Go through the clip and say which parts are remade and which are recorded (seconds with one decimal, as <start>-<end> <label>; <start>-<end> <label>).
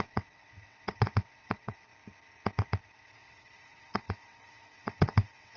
0.0-1.9 remade; 1.9-2.8 recorded; 2.8-5.6 remade